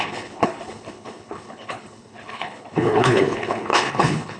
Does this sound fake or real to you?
fake